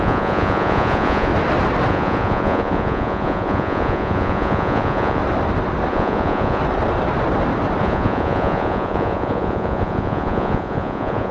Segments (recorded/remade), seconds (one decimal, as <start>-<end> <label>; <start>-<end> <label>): 0.0-1.3 remade; 1.3-1.9 recorded; 1.9-5.2 remade; 5.2-5.9 recorded; 5.9-6.6 remade; 6.6-7.8 recorded; 7.8-11.3 remade